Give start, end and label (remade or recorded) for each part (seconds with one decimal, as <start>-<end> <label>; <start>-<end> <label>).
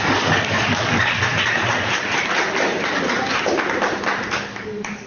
0.0-1.3 remade; 1.3-4.4 recorded; 4.4-5.1 remade